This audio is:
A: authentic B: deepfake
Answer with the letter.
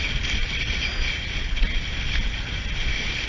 A